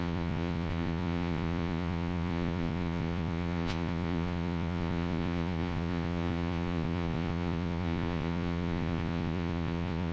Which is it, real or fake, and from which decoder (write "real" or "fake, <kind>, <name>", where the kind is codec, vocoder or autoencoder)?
fake, vocoder, Vocos